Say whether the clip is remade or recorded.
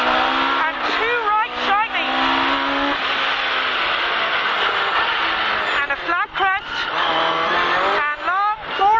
recorded